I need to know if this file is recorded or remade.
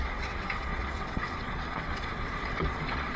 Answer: remade